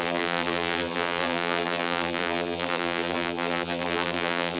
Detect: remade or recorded remade